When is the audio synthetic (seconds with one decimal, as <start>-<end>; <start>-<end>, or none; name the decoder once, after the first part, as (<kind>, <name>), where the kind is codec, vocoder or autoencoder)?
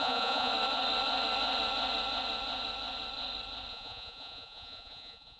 0.0-0.5 (vocoder, Vocos); 3.7-5.4